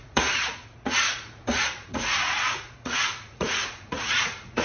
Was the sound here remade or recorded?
remade